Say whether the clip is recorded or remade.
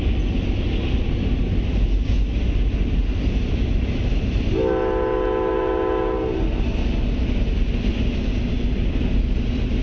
recorded